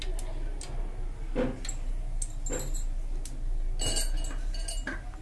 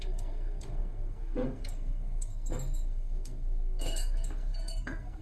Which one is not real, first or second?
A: second